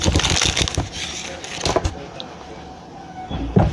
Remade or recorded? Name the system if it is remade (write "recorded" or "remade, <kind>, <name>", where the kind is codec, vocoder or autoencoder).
recorded